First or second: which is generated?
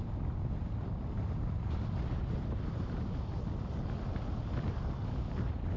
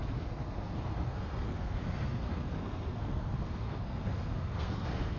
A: second